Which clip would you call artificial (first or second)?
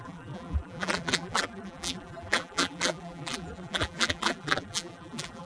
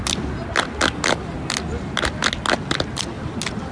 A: first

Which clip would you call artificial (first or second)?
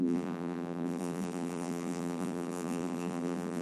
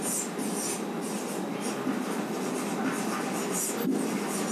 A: first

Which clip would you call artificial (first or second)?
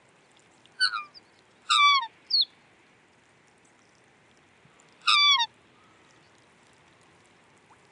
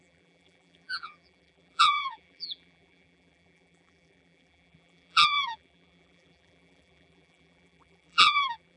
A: second